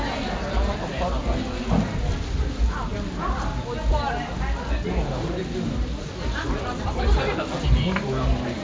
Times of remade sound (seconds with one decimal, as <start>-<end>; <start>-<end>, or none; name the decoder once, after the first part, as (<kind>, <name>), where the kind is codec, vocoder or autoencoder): none